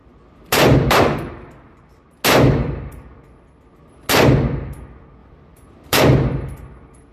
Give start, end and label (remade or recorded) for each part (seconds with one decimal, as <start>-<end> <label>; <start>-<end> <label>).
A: 0.0-1.8 remade; 1.8-5.2 recorded; 5.2-6.0 remade; 6.0-7.1 recorded